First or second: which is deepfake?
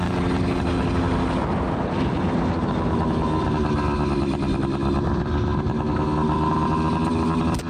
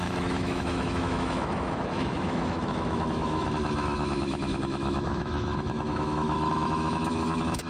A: second